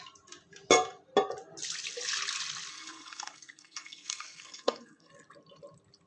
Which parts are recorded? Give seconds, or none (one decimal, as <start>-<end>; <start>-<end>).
0.0-2.7; 5.1-6.1